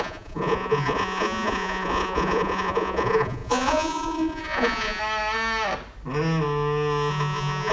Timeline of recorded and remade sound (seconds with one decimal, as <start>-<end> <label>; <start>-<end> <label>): 0.0-5.0 remade; 5.0-7.1 recorded; 7.1-7.7 remade